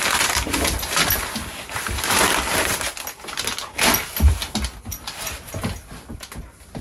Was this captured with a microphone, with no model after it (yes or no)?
yes